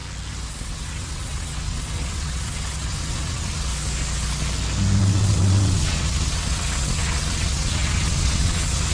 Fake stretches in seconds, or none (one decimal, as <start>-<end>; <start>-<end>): 0.5-3.7; 5.0-8.9